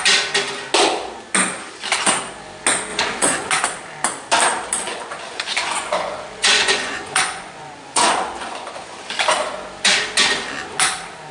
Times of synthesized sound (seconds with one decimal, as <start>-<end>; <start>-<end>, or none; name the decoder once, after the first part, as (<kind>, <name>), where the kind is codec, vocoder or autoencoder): 2.9-3.5 (vocoder, Vocos); 4.8-9.0